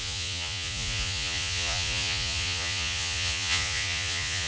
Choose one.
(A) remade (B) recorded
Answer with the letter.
A